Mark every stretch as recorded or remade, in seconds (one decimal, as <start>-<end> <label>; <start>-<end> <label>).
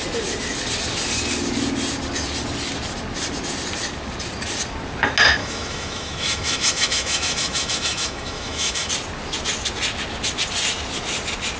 0.0-5.4 recorded; 5.4-8.9 remade; 8.9-11.6 recorded